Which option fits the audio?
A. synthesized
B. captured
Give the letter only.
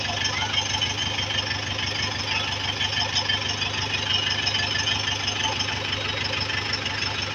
B